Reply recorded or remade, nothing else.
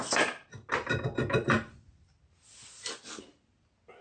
recorded